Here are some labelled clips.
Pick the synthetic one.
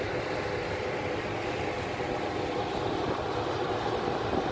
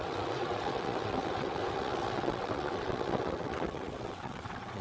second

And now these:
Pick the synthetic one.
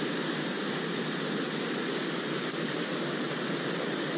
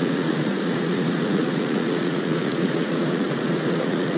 second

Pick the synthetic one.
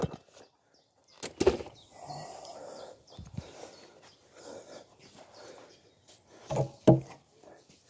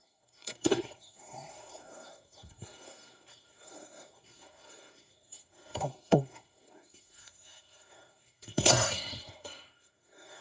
second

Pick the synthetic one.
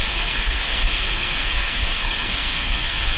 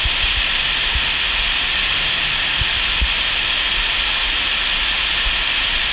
first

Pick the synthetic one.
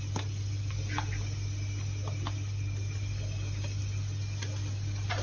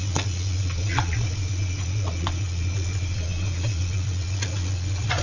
second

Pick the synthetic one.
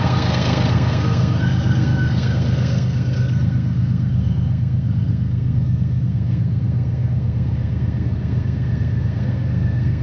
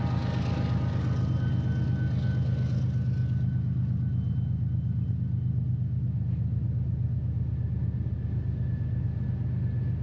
first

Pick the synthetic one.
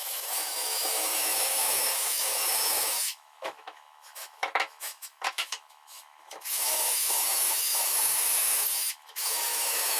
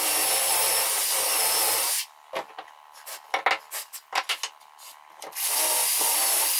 first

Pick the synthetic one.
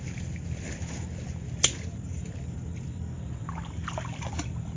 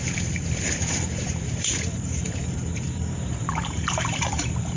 second